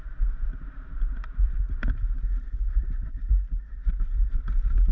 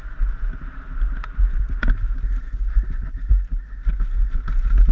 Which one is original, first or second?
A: second